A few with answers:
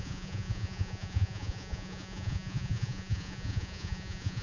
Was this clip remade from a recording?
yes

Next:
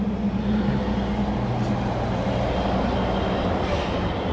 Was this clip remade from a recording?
no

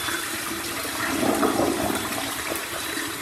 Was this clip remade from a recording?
yes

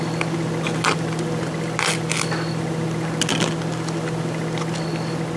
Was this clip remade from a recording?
no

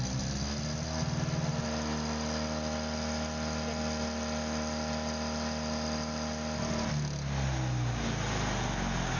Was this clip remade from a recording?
no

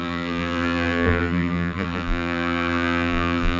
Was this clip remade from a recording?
yes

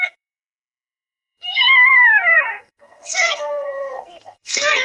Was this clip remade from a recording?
yes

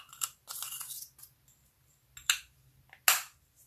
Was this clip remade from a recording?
no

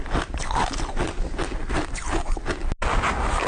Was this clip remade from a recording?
no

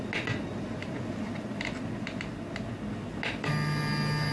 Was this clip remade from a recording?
no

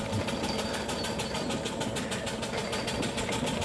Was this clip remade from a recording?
no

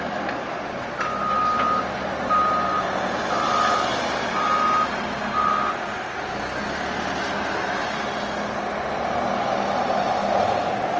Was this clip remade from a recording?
no